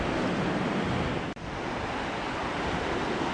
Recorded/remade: recorded